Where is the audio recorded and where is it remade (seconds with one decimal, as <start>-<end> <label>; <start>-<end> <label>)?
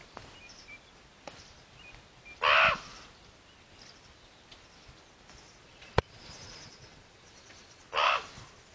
0.0-5.6 recorded; 5.6-7.8 remade; 7.8-8.7 recorded